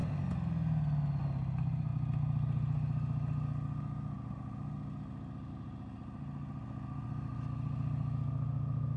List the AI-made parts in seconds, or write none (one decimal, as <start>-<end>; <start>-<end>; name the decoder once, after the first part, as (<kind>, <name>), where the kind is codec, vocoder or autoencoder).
none

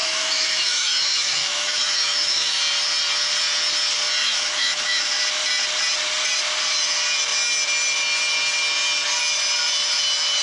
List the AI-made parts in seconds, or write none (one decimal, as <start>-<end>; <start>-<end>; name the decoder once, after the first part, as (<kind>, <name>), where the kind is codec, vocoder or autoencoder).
0.0-2.6 (autoencoder, DAC-VAE); 4.2-5.1

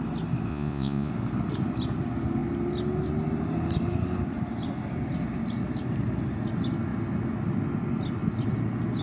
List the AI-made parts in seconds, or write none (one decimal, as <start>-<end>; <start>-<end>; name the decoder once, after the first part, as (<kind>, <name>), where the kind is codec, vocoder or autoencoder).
0.5-1.1 (vocoder, Vocos)

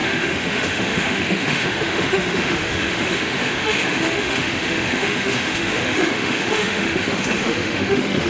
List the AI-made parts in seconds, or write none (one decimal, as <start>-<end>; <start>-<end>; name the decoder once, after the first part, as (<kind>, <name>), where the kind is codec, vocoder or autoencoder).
0.0-8.3 (autoencoder, DAC-VAE)